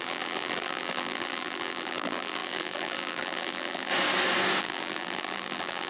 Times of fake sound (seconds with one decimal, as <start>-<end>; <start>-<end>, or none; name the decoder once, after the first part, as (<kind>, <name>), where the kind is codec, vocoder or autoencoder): 0.0-3.9 (vocoder, BigVGAN v2); 4.6-5.9

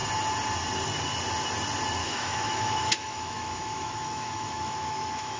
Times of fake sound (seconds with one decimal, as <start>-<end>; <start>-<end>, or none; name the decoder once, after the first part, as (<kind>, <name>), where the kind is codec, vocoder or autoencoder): 2.0-5.4 (autoencoder, DAC-VAE)